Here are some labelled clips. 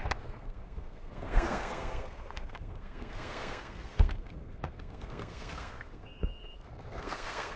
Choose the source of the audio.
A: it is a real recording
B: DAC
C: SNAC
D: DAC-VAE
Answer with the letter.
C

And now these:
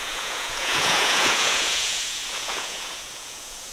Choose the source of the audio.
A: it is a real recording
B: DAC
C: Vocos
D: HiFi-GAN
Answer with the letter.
C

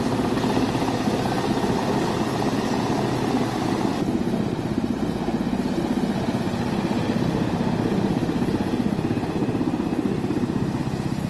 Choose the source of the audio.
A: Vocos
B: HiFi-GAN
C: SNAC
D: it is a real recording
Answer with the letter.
D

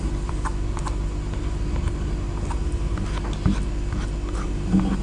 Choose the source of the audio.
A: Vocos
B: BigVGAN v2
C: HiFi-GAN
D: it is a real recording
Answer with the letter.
D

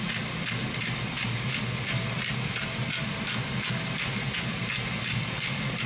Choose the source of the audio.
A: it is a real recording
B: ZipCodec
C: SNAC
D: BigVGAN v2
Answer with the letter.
A